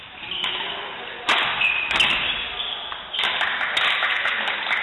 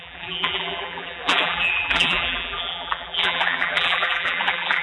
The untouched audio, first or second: first